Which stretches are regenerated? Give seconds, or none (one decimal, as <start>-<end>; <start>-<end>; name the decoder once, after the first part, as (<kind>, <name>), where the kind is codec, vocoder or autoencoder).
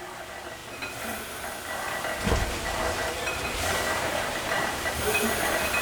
3.0-5.1 (vocoder, BigVGAN v2)